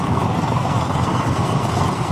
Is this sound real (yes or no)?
no